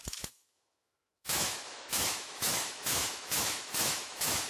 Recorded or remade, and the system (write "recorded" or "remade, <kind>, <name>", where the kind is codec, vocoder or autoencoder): remade, autoencoder, DAC-VAE